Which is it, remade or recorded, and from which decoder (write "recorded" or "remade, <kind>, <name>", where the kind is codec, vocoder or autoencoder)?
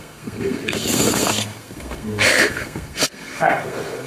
remade, codec, SNAC